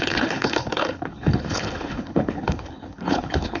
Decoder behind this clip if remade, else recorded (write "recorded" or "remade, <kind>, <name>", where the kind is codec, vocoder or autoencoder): remade, codec, HILCodec